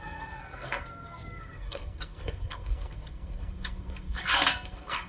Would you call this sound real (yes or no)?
no